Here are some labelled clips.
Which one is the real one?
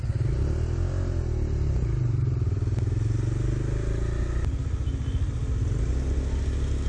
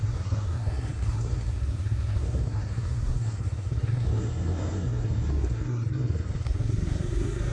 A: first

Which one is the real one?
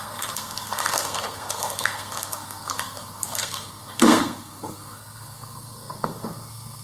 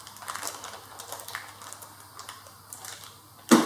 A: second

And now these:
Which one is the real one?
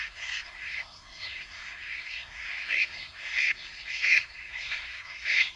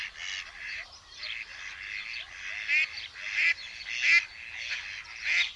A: second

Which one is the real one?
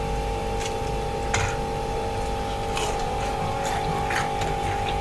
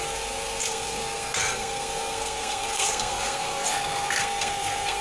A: first